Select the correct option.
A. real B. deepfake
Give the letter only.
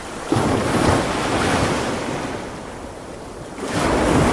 A